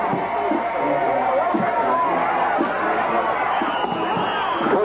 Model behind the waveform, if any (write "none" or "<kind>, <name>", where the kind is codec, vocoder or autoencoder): none